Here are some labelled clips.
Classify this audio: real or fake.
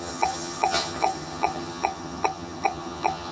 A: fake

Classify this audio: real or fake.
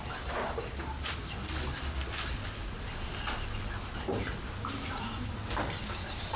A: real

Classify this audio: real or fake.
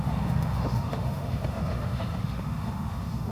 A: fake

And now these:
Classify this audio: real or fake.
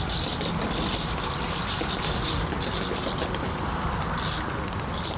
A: real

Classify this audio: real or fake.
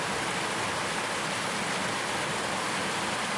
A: real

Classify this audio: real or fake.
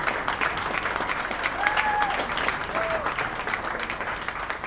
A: real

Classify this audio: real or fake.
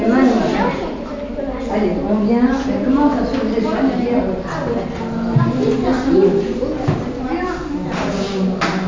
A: real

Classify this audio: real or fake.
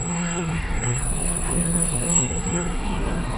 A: fake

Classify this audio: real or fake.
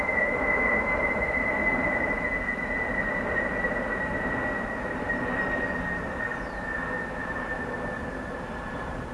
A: fake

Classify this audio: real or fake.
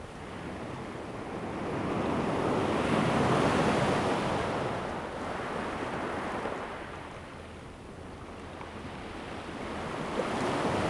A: real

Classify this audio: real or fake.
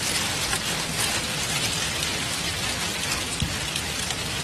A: real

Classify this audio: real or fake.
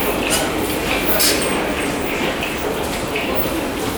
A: real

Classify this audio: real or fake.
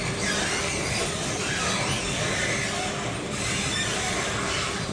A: real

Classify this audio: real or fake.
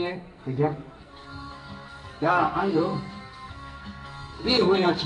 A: fake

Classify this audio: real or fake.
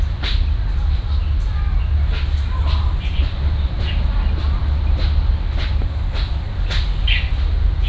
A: real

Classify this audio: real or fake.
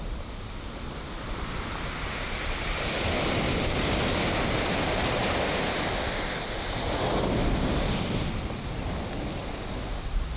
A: real